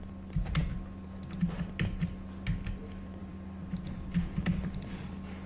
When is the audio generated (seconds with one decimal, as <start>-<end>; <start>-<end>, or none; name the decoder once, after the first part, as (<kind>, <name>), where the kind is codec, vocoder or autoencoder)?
3.2-5.5 (vocoder, BigVGAN v2)